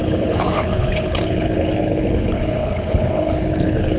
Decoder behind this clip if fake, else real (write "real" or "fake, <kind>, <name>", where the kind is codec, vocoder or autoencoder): fake, codec, HILCodec